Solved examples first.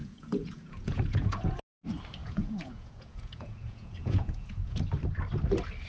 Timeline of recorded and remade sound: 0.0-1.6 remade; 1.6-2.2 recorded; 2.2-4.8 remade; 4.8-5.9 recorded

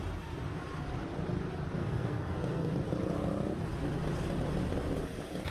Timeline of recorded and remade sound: 0.0-1.8 recorded; 1.8-2.7 remade; 2.7-5.5 recorded

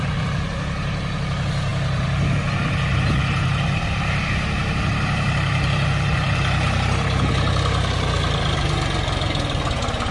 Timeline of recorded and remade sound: 0.0-10.1 recorded